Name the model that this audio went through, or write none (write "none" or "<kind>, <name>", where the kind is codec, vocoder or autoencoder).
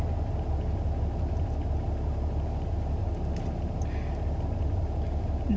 none